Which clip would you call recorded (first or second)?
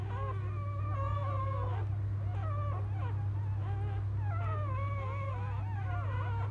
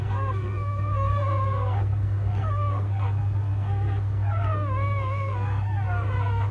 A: first